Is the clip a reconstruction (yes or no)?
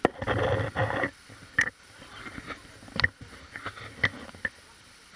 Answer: no